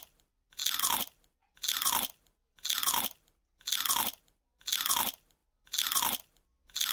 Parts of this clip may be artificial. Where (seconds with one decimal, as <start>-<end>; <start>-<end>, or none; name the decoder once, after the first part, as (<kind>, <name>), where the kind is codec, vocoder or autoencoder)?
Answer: none